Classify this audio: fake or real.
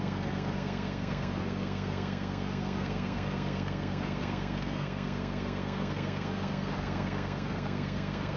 fake